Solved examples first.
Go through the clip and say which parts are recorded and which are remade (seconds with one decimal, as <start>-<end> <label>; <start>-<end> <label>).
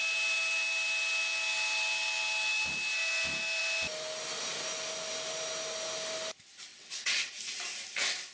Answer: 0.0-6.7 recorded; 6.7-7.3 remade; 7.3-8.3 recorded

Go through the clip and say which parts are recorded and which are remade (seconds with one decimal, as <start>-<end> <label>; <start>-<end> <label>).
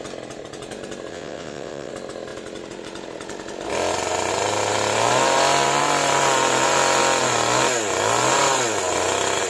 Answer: 0.0-1.1 recorded; 1.1-1.9 remade; 1.9-9.5 recorded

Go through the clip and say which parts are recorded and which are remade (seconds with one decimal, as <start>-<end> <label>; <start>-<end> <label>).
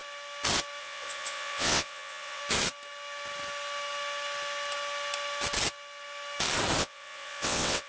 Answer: 0.0-0.8 recorded; 0.8-2.4 remade; 2.4-6.8 recorded; 6.8-7.9 remade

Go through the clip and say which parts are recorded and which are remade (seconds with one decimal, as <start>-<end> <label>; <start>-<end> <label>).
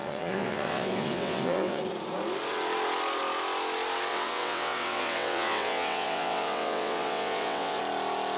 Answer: 0.0-1.8 remade; 1.8-4.1 recorded; 4.1-7.8 remade; 7.8-8.4 recorded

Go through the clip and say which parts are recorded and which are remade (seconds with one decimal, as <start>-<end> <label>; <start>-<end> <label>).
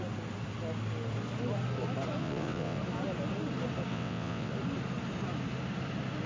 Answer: 0.0-2.2 recorded; 2.2-2.8 remade; 2.8-3.9 recorded; 3.9-4.5 remade; 4.5-6.3 recorded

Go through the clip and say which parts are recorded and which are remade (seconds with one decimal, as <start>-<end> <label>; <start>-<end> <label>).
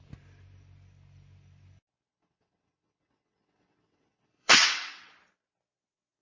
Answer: 0.0-2.2 recorded; 2.2-5.1 remade; 5.1-6.2 recorded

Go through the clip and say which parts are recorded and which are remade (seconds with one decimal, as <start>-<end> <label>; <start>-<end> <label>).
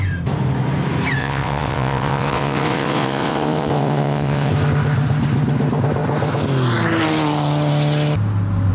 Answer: 0.0-1.2 recorded; 1.2-4.5 remade; 4.5-8.7 recorded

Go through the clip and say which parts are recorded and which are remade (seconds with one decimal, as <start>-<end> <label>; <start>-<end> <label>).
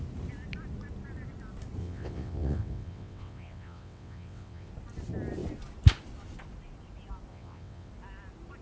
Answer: 0.0-1.8 recorded; 1.8-4.7 remade; 4.7-7.3 recorded; 7.3-7.9 remade; 7.9-8.6 recorded